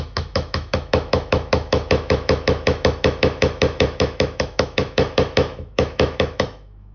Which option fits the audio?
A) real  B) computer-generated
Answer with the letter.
B